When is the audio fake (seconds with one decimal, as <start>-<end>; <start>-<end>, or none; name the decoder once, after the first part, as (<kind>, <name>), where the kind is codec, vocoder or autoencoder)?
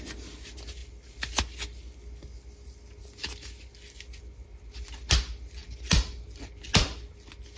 none